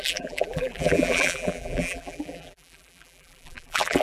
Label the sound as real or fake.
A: fake